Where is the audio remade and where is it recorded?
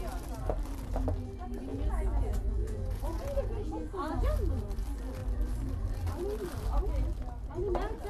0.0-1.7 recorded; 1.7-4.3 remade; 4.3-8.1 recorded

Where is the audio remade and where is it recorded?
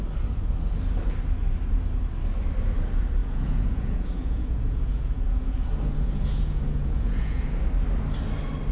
0.0-3.2 recorded; 3.2-7.6 remade; 7.6-8.7 recorded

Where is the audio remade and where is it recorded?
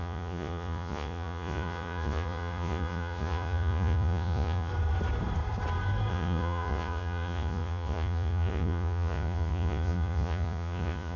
0.0-4.7 remade; 4.7-6.1 recorded; 6.1-11.2 remade